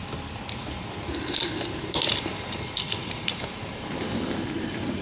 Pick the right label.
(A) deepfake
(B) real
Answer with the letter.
B